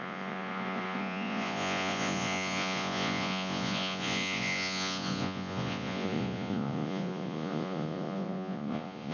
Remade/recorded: remade